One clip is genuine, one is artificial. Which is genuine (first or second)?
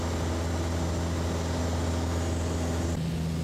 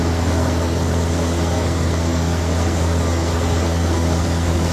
first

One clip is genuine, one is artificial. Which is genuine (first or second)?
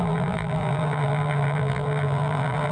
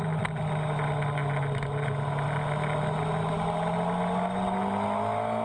second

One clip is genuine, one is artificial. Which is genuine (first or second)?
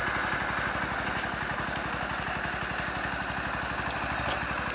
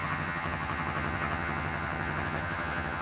first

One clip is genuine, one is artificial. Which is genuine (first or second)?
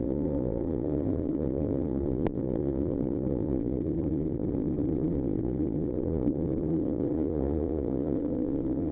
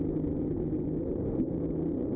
second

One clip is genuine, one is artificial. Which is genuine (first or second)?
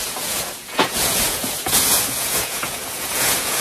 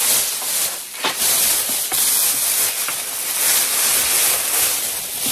second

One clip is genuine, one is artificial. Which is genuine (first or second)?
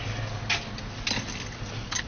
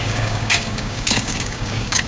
first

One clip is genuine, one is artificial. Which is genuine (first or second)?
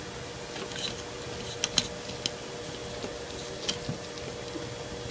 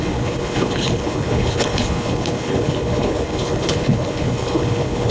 first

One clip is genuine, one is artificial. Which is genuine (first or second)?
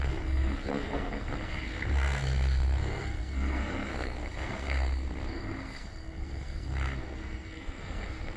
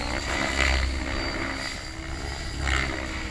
second